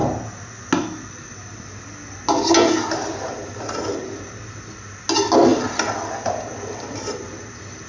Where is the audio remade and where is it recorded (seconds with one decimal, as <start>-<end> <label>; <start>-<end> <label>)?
0.0-7.9 recorded